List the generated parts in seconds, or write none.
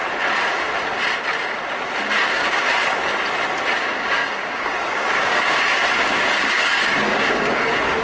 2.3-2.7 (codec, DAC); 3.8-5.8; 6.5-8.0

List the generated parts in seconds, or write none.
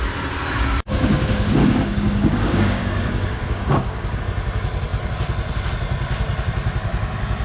1.6-4.2 (codec, DAC)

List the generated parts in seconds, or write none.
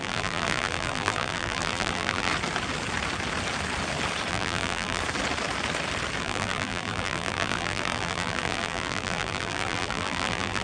0.0-2.3 (vocoder, BigVGAN v2); 4.3-5.0; 6.2-10.6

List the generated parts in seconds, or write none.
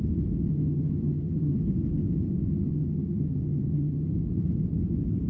0.5-1.6 (vocoder, HiFi-GAN); 2.6-4.1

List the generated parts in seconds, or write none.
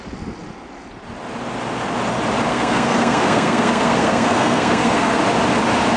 2.5-5.2 (codec, SNAC)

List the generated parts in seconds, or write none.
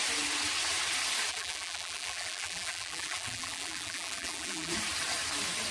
1.3-4.7 (vocoder, BigVGAN v2)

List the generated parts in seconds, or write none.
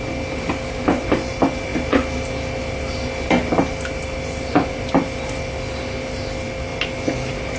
none